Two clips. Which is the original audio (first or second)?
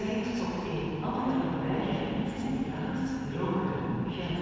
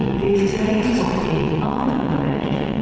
first